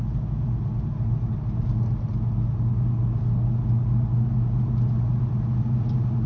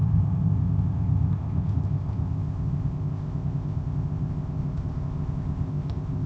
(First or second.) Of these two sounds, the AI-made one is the second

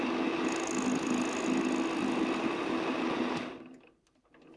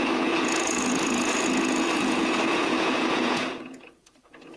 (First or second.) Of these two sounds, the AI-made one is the second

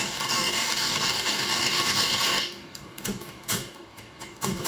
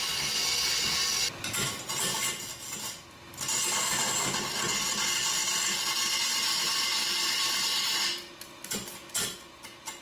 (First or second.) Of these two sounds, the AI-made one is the first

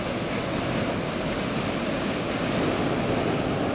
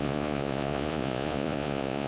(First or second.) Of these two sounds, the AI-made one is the second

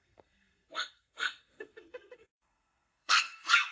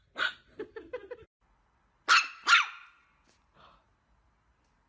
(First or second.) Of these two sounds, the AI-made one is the first